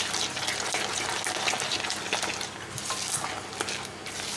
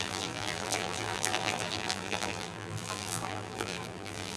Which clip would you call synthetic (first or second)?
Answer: second